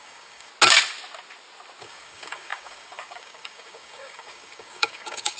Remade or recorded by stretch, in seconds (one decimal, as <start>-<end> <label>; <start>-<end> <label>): 0.0-0.5 remade; 0.5-1.8 recorded; 1.8-5.4 remade

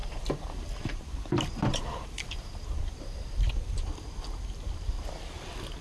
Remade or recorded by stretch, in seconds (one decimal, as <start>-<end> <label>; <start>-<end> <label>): 0.0-3.5 remade; 3.5-5.8 recorded

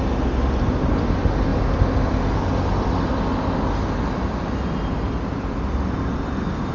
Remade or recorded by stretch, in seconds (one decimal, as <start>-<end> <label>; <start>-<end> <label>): 0.0-6.7 recorded